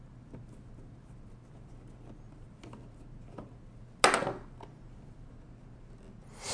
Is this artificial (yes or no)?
no